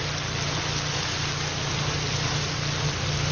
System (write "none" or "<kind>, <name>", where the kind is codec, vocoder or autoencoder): none